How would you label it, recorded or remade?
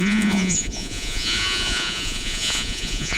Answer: remade